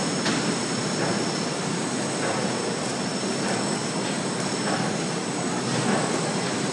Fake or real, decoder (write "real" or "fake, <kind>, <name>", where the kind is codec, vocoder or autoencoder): real